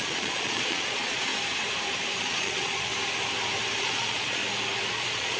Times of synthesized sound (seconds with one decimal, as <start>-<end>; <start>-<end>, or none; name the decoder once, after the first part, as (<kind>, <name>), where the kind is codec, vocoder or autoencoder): 0.0-1.3 (vocoder, Vocos); 2.2-2.9; 3.8-4.4; 4.9-5.4